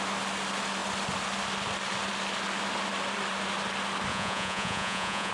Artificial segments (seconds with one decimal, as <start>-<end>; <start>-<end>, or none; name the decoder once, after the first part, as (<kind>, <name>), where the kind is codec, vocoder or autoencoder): 4.1-5.3 (vocoder, Vocos)